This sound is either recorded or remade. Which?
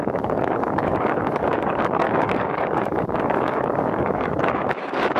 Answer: remade